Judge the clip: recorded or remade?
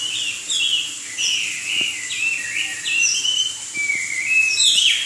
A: recorded